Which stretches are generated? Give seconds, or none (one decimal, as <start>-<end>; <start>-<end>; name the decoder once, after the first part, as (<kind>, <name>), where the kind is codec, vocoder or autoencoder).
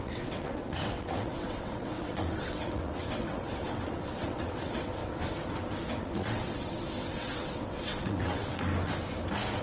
0.0-5.0 (vocoder, WaveNeXt); 6.0-8.7